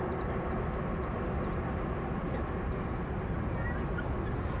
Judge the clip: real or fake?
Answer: real